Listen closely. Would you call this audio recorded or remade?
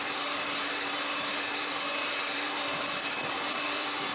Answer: remade